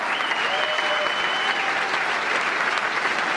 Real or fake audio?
real